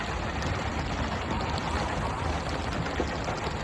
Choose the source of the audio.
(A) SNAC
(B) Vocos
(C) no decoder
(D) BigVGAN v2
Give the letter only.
C